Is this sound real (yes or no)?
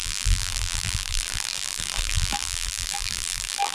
no